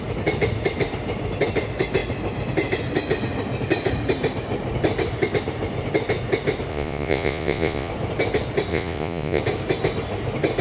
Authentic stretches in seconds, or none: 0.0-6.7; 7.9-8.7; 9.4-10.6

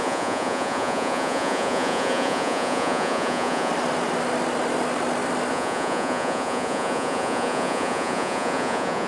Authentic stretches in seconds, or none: 3.7-5.5

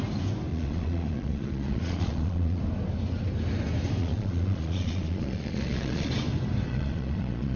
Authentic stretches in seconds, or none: 0.0-0.5; 2.6-4.0; 6.1-6.7